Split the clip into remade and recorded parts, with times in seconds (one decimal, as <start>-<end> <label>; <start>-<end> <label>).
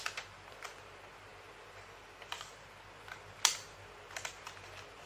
0.0-5.1 recorded